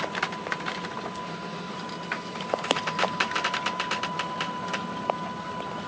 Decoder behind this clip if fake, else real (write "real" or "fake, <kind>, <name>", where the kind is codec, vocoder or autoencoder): fake, vocoder, BigVGAN v2